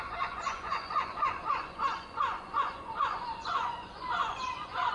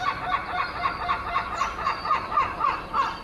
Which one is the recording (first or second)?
second